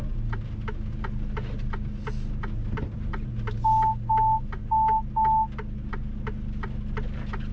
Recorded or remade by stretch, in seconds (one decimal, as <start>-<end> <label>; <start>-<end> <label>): 0.0-7.5 recorded